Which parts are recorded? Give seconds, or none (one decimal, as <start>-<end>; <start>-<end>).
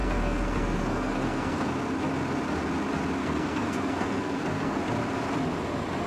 1.7-3.2; 4.8-6.1